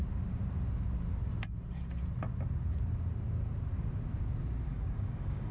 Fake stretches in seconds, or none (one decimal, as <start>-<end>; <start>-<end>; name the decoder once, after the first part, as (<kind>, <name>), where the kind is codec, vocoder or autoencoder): 4.7-5.5 (codec, DAC)